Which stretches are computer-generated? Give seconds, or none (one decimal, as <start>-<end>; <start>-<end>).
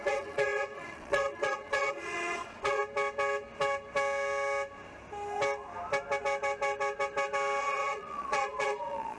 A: 0.0-2.8; 7.6-9.2